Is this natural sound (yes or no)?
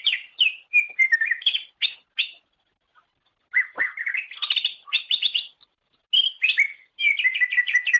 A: yes